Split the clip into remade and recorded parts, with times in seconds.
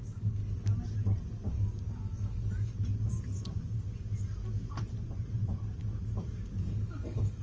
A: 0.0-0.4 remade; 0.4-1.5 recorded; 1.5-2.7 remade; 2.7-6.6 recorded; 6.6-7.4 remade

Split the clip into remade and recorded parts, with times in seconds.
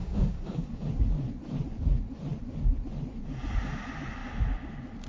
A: 0.0-0.9 remade; 0.9-5.1 recorded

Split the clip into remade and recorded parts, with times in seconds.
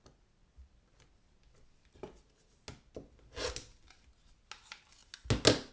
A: 0.0-5.7 recorded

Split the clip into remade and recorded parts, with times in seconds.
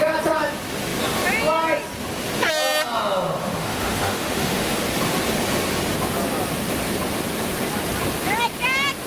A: 0.0-3.4 recorded; 3.4-4.8 remade; 4.8-9.1 recorded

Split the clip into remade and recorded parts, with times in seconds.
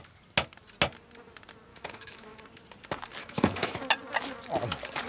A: 0.0-1.7 recorded; 1.7-2.4 remade; 2.4-3.2 recorded; 3.2-3.8 remade; 3.8-5.1 recorded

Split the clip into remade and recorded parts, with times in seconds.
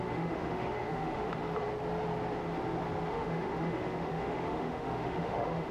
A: 0.0-1.4 remade; 1.4-3.1 recorded; 3.1-5.7 remade